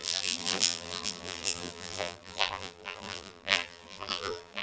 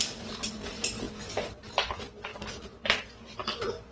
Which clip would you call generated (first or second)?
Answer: first